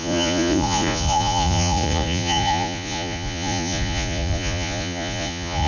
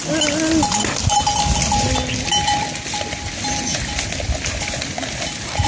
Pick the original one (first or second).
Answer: second